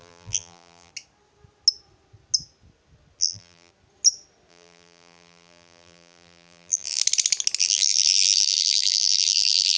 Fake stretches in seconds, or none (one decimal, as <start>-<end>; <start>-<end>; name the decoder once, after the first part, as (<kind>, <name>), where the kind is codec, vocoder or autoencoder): 0.0-0.9 (vocoder, BigVGAN v2); 3.2-3.7; 4.5-7.0; 7.6-9.8